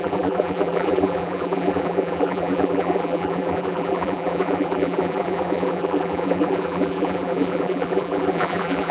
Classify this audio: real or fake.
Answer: fake